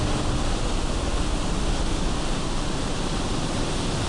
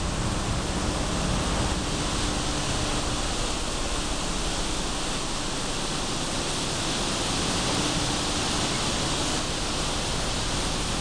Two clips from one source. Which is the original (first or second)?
second